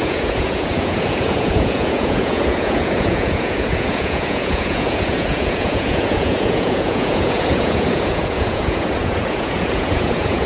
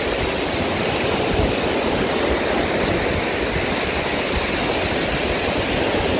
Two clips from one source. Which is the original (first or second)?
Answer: second